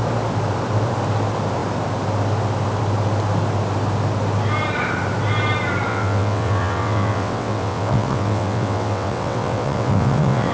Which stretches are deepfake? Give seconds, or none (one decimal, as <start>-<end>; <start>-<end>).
5.9-10.5